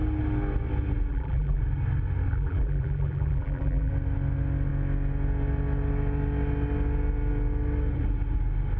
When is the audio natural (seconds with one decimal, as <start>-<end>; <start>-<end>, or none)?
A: 0.0-1.1; 1.6-2.3; 3.9-8.8